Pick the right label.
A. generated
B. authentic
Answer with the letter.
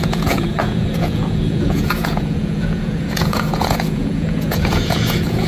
A